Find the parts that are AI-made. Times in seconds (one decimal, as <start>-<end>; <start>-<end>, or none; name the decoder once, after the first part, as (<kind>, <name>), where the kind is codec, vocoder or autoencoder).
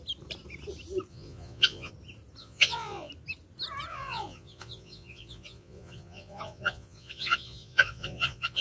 1.1-1.9 (vocoder, Vocos); 2.4-3.1; 3.9-8.6